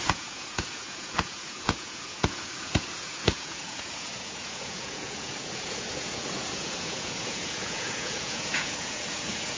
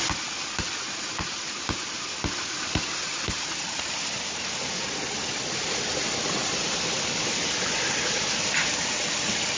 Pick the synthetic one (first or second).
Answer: first